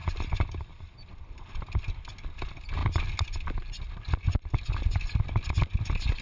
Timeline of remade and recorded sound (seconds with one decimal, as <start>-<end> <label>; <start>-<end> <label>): 0.0-6.2 recorded